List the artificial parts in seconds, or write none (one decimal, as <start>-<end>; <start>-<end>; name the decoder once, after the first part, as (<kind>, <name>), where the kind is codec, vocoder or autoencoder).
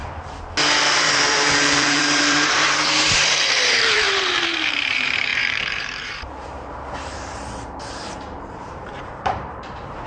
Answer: 1.0-10.1 (vocoder, BigVGAN v2)